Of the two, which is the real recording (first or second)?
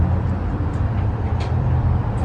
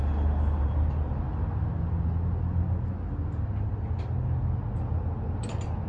second